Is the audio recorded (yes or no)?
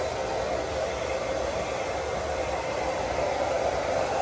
yes